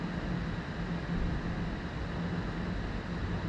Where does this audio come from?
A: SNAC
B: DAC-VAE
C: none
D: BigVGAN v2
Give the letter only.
C